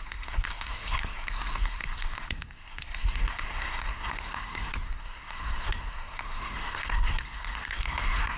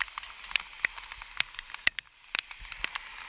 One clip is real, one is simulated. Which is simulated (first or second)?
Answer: first